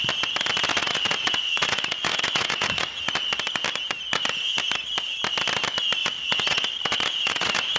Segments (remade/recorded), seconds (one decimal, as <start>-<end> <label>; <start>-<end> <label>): 0.0-0.8 recorded; 0.8-3.1 remade; 3.1-6.0 recorded; 6.0-7.8 remade